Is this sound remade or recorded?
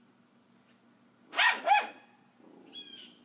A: recorded